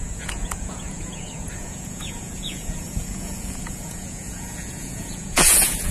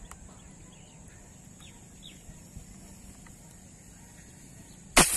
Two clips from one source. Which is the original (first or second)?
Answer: second